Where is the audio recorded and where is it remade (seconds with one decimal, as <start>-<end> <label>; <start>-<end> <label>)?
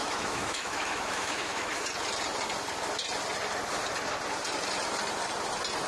0.0-1.8 remade; 1.8-5.9 recorded